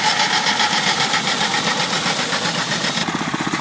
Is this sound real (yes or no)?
yes